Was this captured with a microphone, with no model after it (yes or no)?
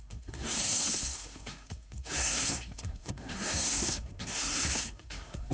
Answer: no